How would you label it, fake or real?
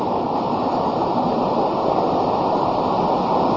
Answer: real